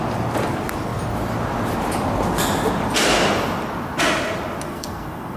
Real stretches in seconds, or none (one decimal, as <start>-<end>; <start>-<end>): 0.0-4.7